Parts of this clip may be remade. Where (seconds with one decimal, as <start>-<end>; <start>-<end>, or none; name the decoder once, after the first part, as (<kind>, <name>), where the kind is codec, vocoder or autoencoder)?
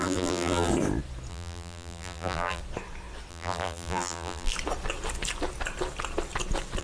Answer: 0.0-0.7 (vocoder, BigVGAN v2); 1.3-2.6; 3.3-4.5